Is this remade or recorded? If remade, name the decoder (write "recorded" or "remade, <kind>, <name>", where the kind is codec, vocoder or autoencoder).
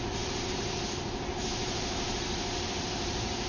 remade, vocoder, BigVGAN v2